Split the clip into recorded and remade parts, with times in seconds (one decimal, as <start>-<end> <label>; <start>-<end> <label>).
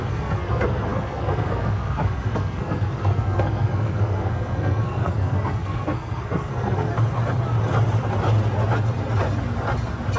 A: 0.0-6.9 remade; 6.9-10.2 recorded